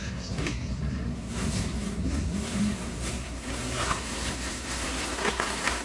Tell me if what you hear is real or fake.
fake